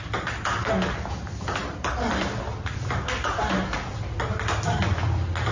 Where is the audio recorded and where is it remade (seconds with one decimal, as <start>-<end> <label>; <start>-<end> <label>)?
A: 0.0-5.5 recorded